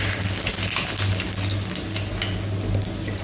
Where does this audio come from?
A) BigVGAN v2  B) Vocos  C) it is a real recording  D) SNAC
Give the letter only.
C